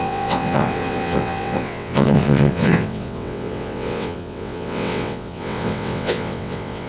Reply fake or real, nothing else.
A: fake